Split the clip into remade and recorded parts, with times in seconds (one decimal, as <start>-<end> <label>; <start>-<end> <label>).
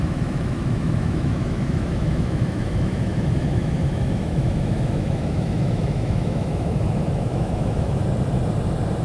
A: 0.0-8.0 remade; 8.0-9.0 recorded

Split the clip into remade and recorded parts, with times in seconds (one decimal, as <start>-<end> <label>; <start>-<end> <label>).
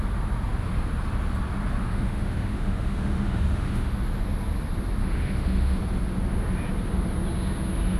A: 0.0-1.8 recorded; 1.8-3.9 remade; 3.9-5.0 recorded; 5.0-5.8 remade; 5.8-8.0 recorded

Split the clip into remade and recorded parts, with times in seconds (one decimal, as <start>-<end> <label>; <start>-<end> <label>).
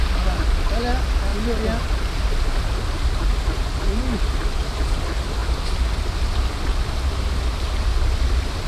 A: 0.0-8.7 recorded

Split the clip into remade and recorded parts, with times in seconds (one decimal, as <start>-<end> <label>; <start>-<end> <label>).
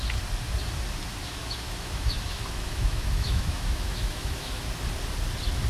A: 0.0-1.2 recorded; 1.2-4.6 remade; 4.6-5.7 recorded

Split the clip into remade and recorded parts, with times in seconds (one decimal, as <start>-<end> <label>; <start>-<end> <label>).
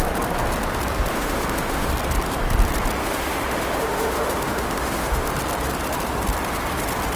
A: 0.0-1.1 recorded; 1.1-1.9 remade; 1.9-3.0 recorded; 3.0-5.3 remade; 5.3-7.2 recorded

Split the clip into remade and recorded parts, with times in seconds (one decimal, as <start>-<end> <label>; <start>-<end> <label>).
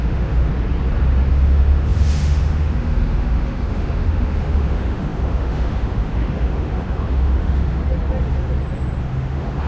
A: 0.0-0.5 remade; 0.5-1.3 recorded; 1.3-7.8 remade; 7.8-9.0 recorded; 9.0-9.7 remade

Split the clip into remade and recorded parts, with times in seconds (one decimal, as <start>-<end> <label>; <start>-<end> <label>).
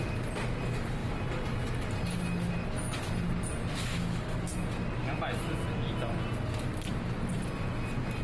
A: 0.0-3.8 recorded; 3.8-4.7 remade; 4.7-8.2 recorded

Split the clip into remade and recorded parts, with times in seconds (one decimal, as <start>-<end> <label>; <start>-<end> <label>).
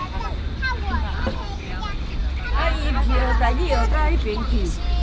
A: 0.0-5.0 recorded